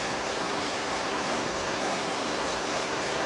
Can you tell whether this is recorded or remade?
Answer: remade